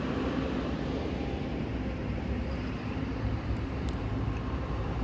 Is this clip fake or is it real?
fake